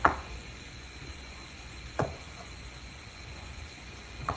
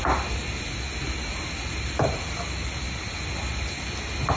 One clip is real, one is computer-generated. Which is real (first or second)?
second